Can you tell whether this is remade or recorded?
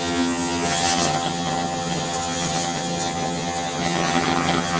remade